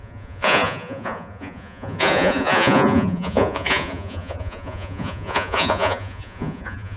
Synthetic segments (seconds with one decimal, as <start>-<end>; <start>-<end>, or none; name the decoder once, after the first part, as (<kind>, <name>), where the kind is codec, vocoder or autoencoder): 0.0-7.0 (vocoder, Vocos)